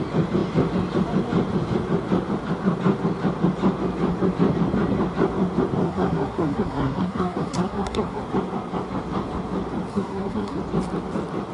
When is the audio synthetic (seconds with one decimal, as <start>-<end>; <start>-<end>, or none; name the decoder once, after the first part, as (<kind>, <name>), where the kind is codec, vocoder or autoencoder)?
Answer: 5.8-8.2 (codec, SNAC); 9.9-10.6